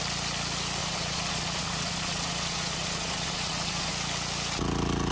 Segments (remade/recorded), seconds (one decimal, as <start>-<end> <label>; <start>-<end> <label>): 0.0-0.8 recorded; 0.8-3.9 remade; 3.9-5.1 recorded